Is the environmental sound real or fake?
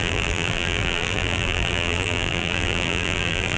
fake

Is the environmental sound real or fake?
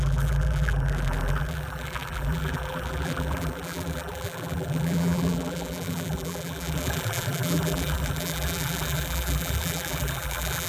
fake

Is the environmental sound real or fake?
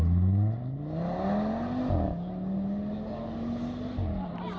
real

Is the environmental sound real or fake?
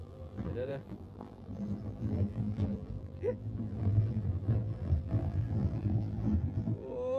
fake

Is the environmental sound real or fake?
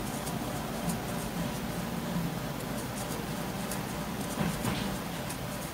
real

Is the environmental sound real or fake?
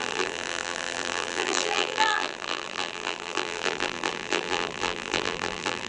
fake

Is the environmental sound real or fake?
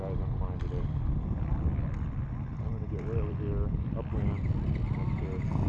real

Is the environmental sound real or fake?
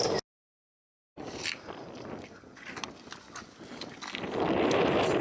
real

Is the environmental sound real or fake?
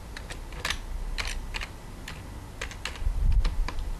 real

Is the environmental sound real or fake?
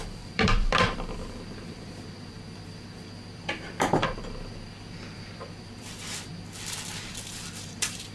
fake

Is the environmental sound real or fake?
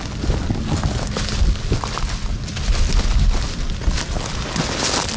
real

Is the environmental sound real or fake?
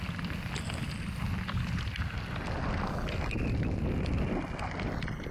real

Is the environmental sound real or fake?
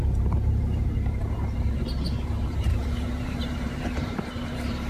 fake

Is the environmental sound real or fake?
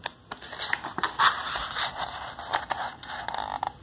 real